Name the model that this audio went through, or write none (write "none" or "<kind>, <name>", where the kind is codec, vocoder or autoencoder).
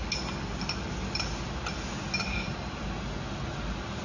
none